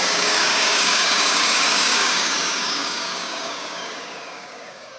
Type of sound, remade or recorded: remade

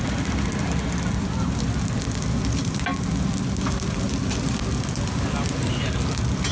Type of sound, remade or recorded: recorded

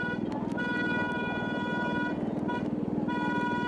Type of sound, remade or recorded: recorded